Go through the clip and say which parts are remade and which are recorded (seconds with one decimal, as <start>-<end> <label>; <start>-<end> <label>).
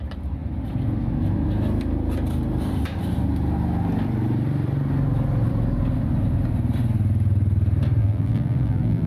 0.0-8.0 recorded; 8.0-9.1 remade